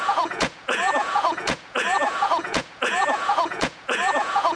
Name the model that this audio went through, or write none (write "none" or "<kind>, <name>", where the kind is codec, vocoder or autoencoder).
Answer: vocoder, Vocos